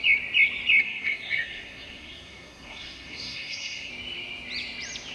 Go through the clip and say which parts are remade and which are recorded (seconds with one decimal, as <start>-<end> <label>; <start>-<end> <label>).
0.0-0.8 recorded; 0.8-3.9 remade; 3.9-5.1 recorded